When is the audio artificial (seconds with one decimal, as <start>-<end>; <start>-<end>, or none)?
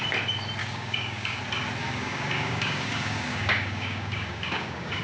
0.6-1.4; 1.8-5.0